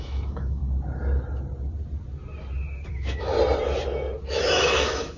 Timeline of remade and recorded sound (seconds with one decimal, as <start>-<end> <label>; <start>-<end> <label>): 0.0-0.6 remade; 0.6-2.9 recorded; 2.9-3.3 remade; 3.3-4.3 recorded; 4.3-5.2 remade